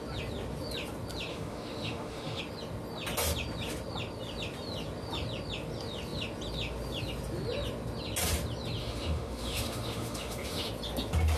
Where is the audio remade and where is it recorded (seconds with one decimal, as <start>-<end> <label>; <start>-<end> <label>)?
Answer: 0.0-1.3 recorded; 1.3-2.4 remade; 2.4-8.8 recorded; 8.8-10.7 remade; 10.7-11.4 recorded